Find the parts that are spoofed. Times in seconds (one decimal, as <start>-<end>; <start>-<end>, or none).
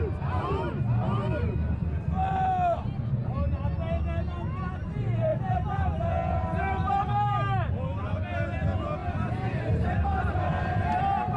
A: 5.3-6.1; 9.0-11.4